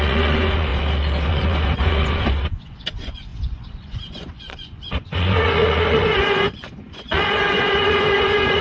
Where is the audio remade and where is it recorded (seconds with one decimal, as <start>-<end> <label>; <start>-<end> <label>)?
0.0-0.7 remade; 0.7-1.3 recorded; 1.3-8.6 remade